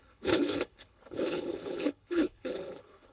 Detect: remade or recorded remade